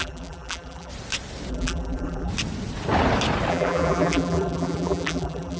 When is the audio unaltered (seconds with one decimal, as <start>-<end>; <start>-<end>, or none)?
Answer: 0.9-1.5; 2.3-3.5